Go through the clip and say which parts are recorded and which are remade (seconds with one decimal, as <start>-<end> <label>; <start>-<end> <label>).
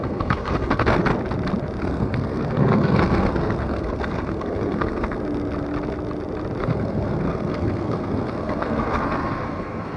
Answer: 0.0-1.0 remade; 1.0-1.8 recorded; 1.8-5.2 remade; 5.2-6.6 recorded; 6.6-10.0 remade